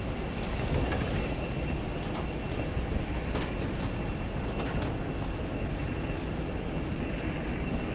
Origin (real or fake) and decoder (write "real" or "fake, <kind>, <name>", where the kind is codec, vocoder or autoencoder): real